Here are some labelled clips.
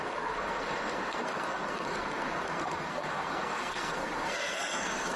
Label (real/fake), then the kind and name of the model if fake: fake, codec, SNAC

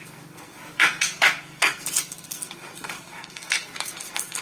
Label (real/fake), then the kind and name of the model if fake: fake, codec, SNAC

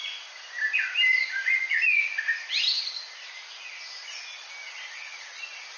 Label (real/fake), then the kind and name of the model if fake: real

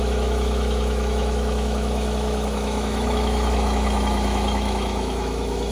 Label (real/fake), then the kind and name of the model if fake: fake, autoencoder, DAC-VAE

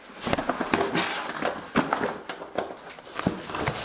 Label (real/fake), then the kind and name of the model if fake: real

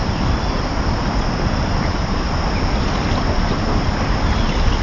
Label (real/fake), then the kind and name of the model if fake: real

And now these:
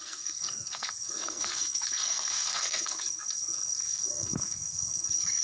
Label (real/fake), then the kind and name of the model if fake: fake, codec, SNAC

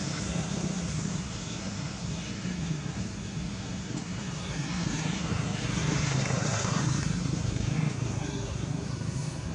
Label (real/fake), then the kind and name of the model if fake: fake, codec, SNAC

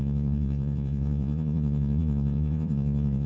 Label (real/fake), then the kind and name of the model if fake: fake, vocoder, Vocos